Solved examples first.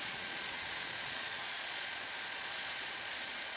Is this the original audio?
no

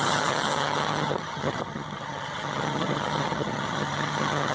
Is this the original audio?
no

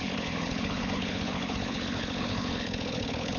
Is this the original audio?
no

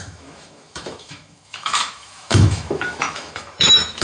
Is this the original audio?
no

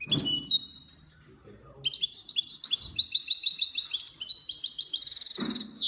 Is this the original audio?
yes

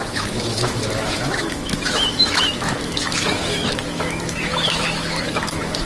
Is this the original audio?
no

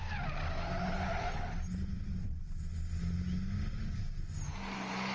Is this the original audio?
yes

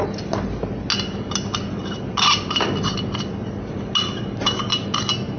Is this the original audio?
yes